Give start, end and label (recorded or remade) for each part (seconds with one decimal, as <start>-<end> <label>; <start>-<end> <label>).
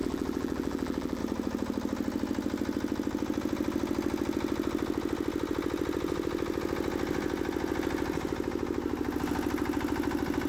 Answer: 0.0-1.2 remade; 1.2-10.5 recorded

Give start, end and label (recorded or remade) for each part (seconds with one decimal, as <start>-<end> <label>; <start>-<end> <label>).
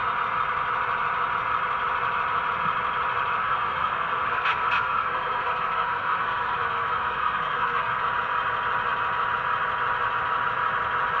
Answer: 0.0-3.4 recorded; 3.4-8.0 remade; 8.0-11.2 recorded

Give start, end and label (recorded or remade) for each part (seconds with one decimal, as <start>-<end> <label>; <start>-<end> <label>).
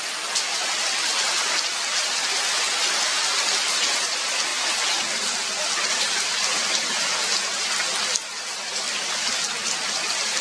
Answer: 0.0-10.4 recorded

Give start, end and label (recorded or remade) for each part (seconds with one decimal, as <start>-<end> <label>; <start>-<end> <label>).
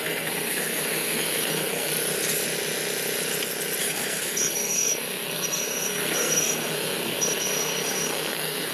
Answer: 0.0-1.9 remade; 1.9-3.8 recorded; 3.8-8.7 remade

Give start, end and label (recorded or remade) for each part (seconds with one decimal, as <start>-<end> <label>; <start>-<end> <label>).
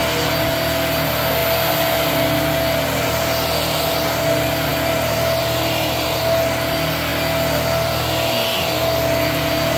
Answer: 0.0-4.7 recorded; 4.7-6.2 remade; 6.2-9.8 recorded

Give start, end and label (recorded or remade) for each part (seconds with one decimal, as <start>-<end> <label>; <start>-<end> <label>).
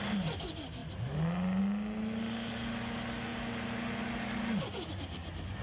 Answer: 0.0-5.6 recorded